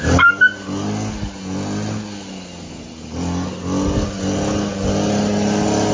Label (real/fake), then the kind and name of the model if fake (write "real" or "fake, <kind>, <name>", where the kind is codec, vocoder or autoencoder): real